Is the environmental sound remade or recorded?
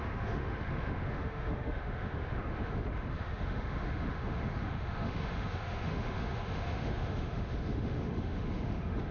remade